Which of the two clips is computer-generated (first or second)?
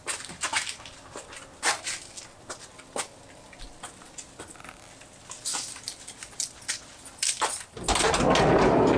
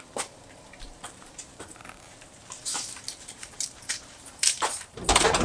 second